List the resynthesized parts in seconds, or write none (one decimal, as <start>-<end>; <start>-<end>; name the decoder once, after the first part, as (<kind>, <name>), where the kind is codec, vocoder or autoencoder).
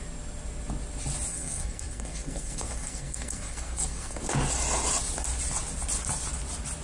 1.3-4.2 (codec, SNAC)